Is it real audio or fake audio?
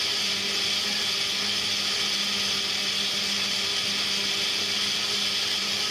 real